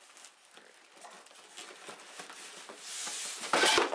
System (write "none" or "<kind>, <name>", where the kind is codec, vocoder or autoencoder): none